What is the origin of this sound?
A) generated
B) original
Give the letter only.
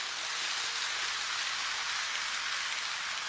B